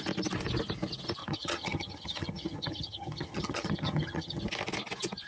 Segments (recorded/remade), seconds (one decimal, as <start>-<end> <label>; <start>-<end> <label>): 0.0-1.2 recorded; 1.2-4.4 remade; 4.4-5.3 recorded